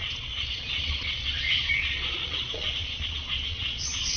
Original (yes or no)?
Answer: no